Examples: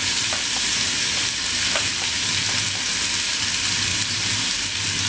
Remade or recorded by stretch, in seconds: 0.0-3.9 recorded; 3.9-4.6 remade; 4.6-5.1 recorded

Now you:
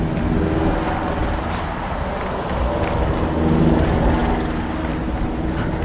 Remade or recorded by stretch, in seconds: 0.0-5.8 recorded

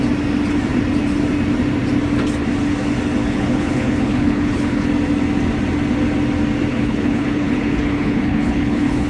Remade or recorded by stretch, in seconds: 0.0-3.2 recorded; 3.2-4.9 remade; 4.9-6.7 recorded; 6.7-9.1 remade

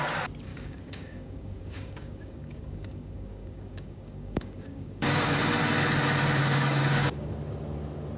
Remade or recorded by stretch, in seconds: 0.0-0.5 recorded; 0.5-5.4 remade; 5.4-6.4 recorded; 6.4-7.3 remade; 7.3-8.2 recorded

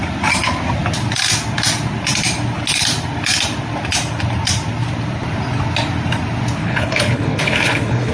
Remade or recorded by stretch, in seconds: 0.0-6.6 recorded; 6.6-8.1 remade

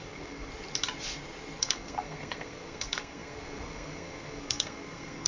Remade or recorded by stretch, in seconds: 0.0-0.5 remade; 0.5-1.6 recorded; 1.6-5.3 remade

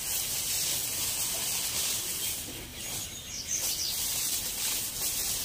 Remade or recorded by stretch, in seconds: 0.0-5.4 recorded

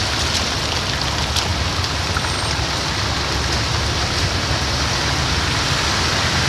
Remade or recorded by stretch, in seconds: 0.0-6.5 recorded